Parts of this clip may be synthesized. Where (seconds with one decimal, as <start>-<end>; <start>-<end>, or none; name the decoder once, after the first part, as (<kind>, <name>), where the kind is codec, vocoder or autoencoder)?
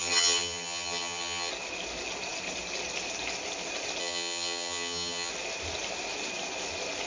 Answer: 0.0-1.5 (vocoder, HiFi-GAN); 4.0-5.3